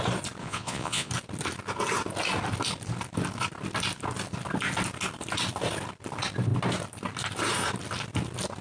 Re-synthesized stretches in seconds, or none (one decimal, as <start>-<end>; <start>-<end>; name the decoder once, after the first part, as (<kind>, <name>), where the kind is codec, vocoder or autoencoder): 0.4-1.1 (vocoder, Vocos)